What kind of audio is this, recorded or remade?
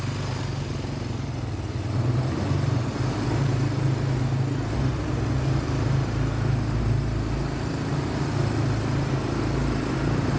recorded